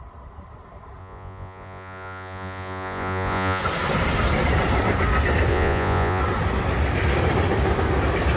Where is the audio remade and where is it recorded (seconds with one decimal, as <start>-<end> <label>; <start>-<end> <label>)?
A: 0.0-1.0 recorded; 1.0-3.6 remade; 3.6-5.5 recorded; 5.5-6.2 remade; 6.2-8.4 recorded